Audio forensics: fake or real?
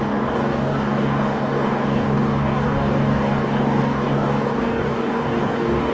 fake